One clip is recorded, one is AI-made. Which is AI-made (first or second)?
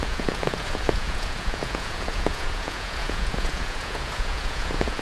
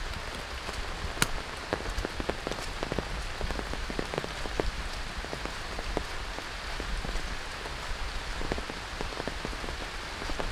first